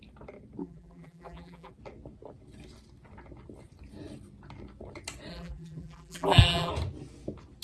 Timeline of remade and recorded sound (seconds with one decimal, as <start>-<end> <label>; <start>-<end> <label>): 0.0-0.6 recorded; 0.6-1.7 remade; 1.7-5.3 recorded; 5.3-6.7 remade; 6.7-7.6 recorded